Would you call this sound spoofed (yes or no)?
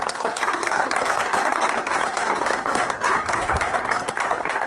yes